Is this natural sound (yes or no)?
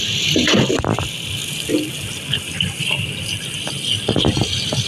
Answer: yes